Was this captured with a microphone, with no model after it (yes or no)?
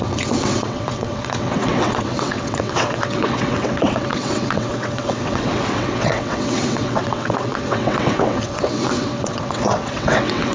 no